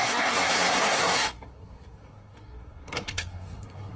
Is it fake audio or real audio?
fake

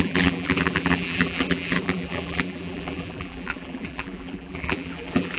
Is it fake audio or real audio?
fake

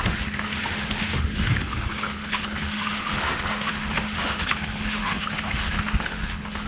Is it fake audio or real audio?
fake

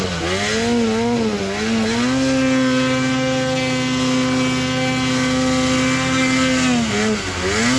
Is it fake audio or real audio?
real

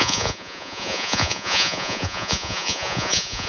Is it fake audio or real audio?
fake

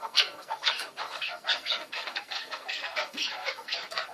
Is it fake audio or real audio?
fake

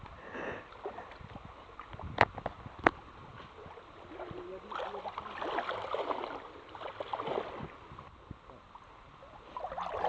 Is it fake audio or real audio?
real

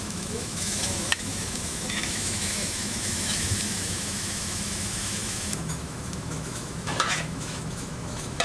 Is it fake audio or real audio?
fake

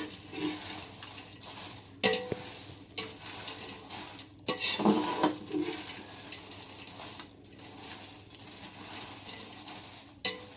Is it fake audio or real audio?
real